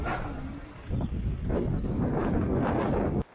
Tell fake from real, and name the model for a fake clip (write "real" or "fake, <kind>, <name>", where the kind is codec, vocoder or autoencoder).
real